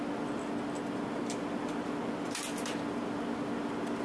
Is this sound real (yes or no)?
yes